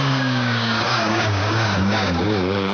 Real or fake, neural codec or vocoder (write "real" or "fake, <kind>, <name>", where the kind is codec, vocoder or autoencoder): fake, codec, DAC